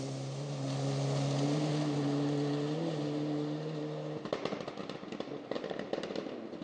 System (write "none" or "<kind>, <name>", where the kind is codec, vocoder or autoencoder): none